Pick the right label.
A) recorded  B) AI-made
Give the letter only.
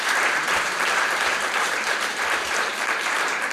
B